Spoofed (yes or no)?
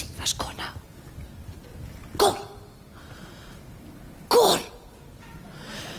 no